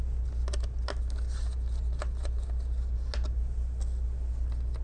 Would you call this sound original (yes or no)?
yes